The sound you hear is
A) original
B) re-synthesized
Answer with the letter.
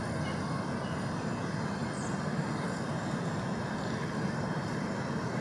A